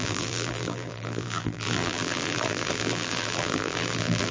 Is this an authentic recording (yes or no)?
no